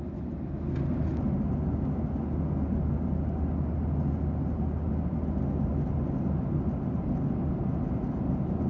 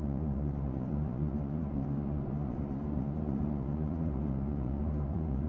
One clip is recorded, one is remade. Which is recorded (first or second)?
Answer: first